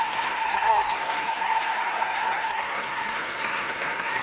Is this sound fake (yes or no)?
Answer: yes